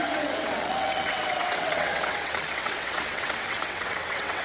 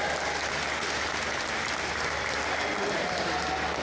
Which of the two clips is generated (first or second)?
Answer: first